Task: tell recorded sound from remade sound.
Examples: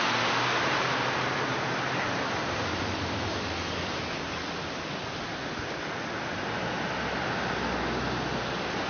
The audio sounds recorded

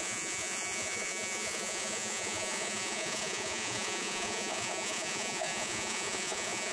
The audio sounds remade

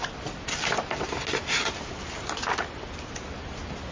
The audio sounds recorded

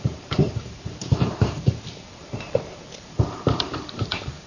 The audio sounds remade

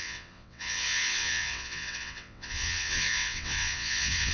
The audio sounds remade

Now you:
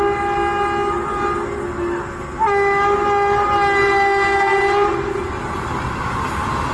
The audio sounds recorded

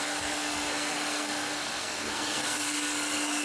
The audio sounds remade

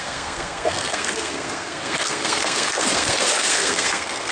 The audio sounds remade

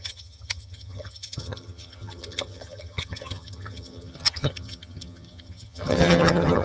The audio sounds remade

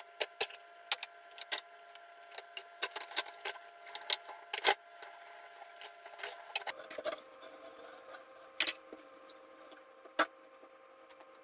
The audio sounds recorded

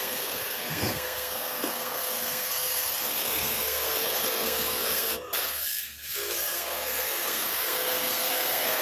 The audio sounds remade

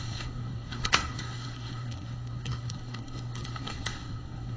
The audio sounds remade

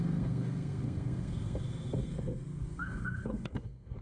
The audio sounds remade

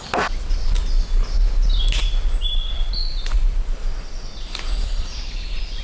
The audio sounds recorded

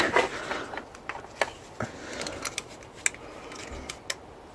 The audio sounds recorded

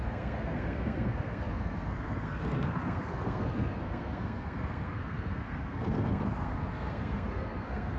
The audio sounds remade